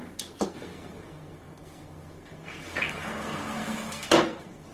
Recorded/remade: remade